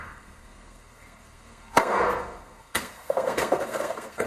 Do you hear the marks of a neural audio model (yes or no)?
yes